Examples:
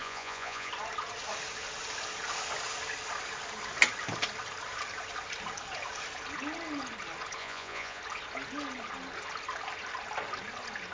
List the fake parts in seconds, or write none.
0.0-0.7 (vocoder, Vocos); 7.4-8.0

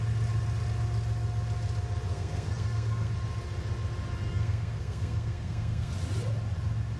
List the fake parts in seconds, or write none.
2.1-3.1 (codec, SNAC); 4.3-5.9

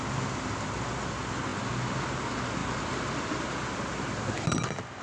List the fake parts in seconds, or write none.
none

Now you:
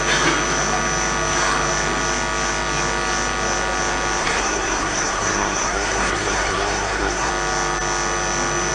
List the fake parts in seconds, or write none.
4.2-7.3 (codec, SNAC)

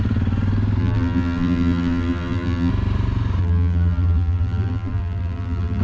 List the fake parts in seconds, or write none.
0.8-2.7 (vocoder, BigVGAN v2); 3.4-5.8

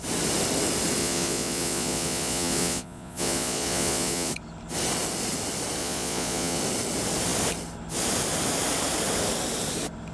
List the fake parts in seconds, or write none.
1.0-4.3 (vocoder, Vocos); 5.8-6.6

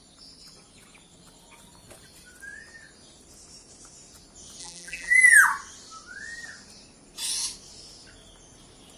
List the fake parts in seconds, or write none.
4.6-5.1 (vocoder, BigVGAN v2)